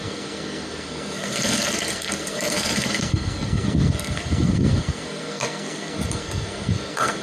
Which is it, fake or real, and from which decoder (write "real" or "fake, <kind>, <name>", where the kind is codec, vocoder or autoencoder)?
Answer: fake, codec, SNAC